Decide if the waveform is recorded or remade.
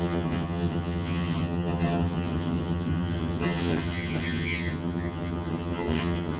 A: remade